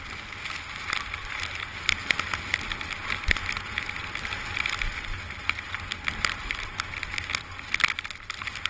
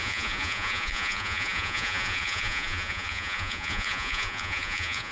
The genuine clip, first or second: first